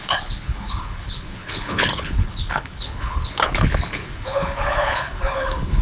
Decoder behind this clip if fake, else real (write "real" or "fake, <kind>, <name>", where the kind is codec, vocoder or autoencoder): fake, codec, HILCodec